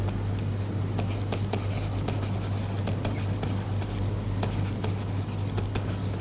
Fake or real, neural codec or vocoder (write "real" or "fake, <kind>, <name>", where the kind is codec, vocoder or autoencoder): real